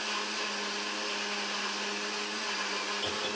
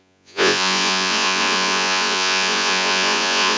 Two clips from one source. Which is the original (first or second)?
first